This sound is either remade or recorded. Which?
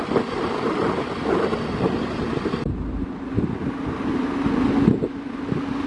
recorded